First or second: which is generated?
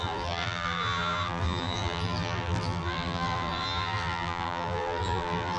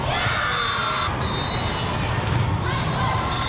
first